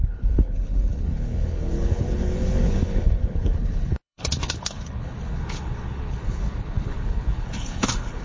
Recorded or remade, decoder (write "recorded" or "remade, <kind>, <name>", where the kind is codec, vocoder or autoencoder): remade, codec, HILCodec